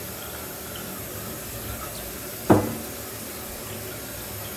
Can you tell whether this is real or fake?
real